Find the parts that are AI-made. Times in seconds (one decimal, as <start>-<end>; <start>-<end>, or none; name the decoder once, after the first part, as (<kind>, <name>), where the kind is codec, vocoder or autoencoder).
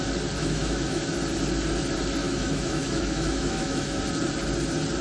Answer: 0.4-1.0 (autoencoder, DAC-VAE); 2.2-4.0